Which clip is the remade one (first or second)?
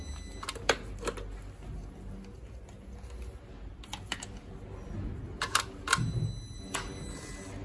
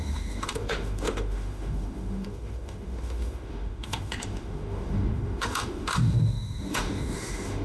second